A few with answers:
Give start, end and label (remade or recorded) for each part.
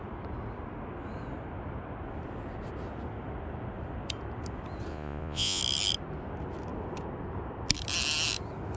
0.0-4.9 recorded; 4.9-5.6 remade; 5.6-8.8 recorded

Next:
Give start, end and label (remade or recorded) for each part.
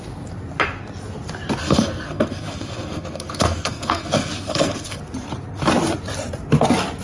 0.0-1.6 recorded; 1.6-5.0 remade; 5.0-7.0 recorded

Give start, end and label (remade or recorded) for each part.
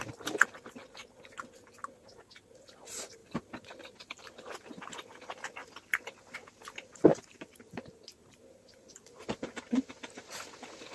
0.0-7.1 recorded; 7.1-10.3 remade; 10.3-10.9 recorded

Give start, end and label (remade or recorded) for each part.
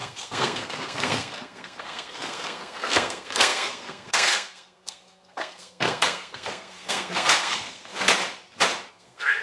0.0-8.1 remade; 8.1-8.9 recorded; 8.9-9.4 remade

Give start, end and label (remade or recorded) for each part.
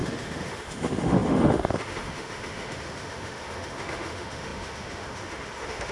0.0-5.9 remade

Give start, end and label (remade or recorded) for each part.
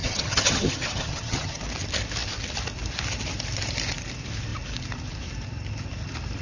0.0-1.6 remade; 1.6-6.4 recorded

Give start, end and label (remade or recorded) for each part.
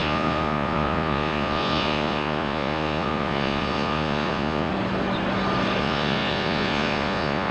0.0-4.7 remade; 4.7-5.8 recorded; 5.8-7.5 remade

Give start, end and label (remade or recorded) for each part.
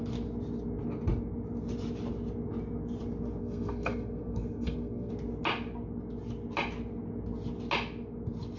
0.0-3.4 recorded; 3.4-5.1 remade; 5.1-8.6 recorded